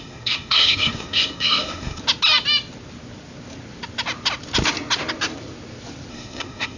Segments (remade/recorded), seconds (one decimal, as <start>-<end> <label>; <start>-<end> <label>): 0.0-2.0 remade; 2.0-6.1 recorded; 6.1-6.8 remade

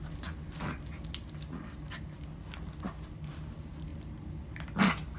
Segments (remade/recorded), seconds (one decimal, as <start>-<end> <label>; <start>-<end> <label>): 0.0-5.2 recorded

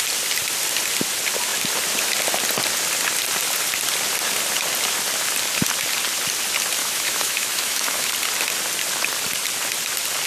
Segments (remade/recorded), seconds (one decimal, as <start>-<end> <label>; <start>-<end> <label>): 0.0-6.8 recorded; 6.8-8.1 remade; 8.1-10.3 recorded